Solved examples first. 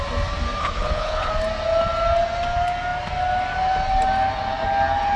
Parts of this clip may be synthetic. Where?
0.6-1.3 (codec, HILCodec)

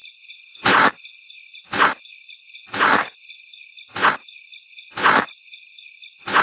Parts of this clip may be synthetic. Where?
0.0-3.5 (vocoder, BigVGAN v2)